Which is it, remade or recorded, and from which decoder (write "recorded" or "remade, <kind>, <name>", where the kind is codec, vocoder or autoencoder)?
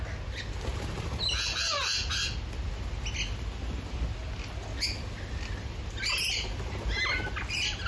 recorded